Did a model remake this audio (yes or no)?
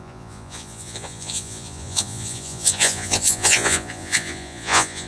yes